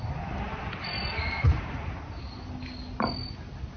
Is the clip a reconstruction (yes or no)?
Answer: no